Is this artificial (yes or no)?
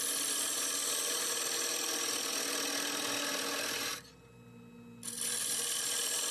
no